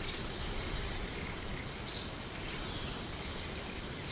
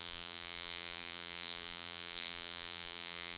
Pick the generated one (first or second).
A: second